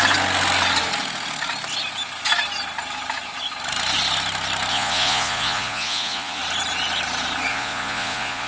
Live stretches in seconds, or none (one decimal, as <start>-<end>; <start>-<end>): 0.0-4.7; 6.4-7.5